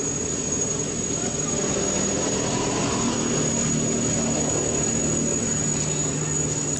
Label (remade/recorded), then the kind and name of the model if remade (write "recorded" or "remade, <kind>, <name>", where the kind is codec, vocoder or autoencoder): recorded